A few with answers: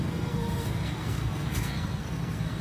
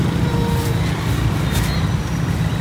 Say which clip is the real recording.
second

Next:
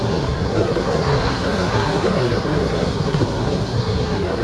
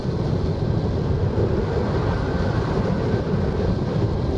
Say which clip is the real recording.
second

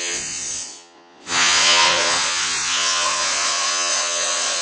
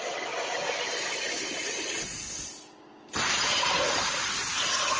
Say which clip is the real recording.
second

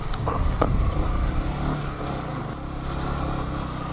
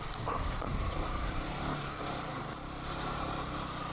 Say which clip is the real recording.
first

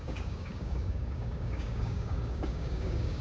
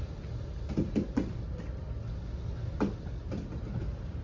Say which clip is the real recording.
second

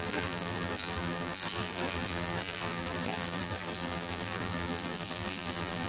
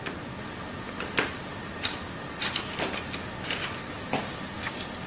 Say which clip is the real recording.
second